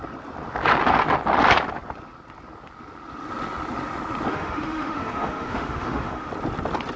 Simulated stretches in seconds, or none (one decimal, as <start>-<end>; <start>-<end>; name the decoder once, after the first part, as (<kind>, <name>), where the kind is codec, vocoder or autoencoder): 4.3-6.3 (autoencoder, DAC-VAE)